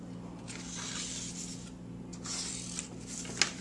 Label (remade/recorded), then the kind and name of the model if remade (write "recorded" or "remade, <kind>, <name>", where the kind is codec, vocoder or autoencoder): recorded